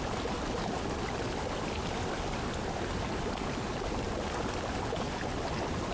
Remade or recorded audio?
recorded